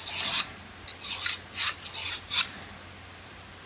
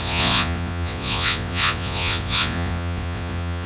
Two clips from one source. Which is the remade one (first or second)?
second